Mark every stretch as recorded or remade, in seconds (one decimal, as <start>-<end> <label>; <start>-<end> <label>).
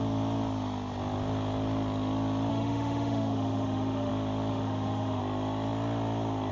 0.0-2.5 recorded; 2.5-4.1 remade; 4.1-4.5 recorded; 4.5-5.2 remade; 5.2-6.5 recorded